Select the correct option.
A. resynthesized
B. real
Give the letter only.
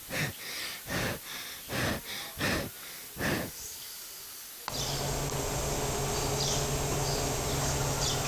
B